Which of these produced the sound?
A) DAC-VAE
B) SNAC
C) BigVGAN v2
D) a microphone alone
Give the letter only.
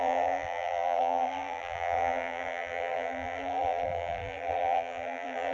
C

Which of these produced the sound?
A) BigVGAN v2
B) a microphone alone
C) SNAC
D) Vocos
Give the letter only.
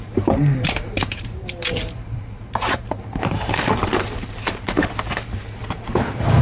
A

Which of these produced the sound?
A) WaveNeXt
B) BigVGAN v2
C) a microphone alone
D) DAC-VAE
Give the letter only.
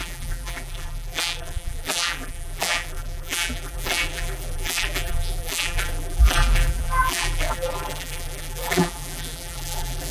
B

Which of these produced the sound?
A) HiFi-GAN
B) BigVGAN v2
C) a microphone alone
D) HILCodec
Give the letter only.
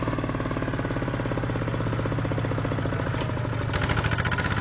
C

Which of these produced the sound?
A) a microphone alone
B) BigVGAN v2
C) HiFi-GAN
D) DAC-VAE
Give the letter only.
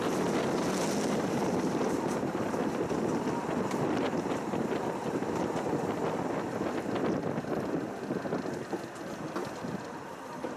A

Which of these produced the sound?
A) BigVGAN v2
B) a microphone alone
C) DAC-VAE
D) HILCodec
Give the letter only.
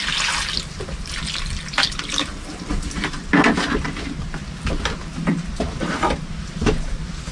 B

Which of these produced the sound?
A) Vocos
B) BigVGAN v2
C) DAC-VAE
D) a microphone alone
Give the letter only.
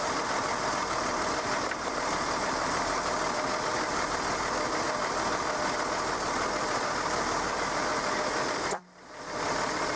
B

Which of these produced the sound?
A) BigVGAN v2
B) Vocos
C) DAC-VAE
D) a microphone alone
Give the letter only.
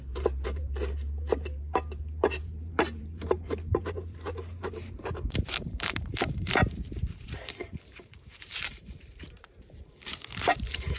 A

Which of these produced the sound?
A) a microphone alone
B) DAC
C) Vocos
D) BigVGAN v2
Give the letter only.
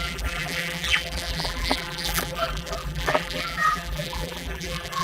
D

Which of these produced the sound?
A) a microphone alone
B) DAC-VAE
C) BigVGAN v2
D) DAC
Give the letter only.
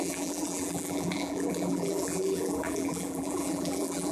C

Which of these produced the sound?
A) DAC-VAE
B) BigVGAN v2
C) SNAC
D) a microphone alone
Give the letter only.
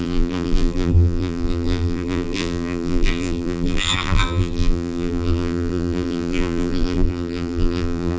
B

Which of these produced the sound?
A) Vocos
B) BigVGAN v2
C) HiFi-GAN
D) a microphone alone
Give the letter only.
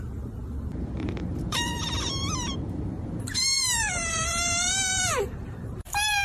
B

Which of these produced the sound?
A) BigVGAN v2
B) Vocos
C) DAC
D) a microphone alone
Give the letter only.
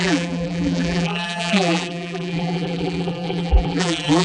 A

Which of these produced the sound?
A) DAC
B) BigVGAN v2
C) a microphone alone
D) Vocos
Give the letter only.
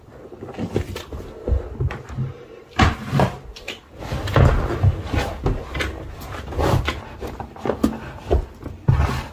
C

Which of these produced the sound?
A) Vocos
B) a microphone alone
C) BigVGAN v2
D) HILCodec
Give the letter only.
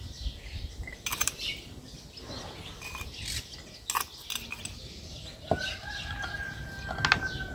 B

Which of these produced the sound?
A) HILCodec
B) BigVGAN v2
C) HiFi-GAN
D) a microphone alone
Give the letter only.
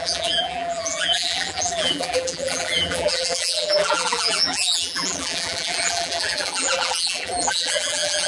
B